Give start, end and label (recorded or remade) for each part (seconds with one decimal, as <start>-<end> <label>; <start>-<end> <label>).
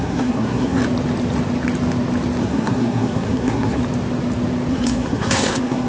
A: 0.0-0.8 remade; 0.8-2.4 recorded; 2.4-3.8 remade; 3.8-4.7 recorded; 4.7-5.9 remade